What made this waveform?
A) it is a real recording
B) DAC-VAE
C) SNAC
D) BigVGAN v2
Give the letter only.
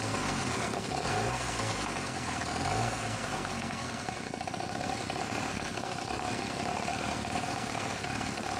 C